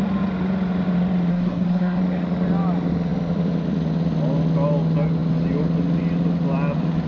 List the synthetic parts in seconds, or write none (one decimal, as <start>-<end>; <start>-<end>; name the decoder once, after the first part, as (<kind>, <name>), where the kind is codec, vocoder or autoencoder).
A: 1.3-2.0 (codec, SNAC)